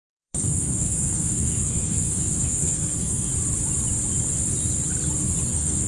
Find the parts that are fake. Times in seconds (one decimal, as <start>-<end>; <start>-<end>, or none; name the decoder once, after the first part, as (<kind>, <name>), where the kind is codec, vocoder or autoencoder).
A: 0.0-3.3 (codec, SNAC); 5.5-5.9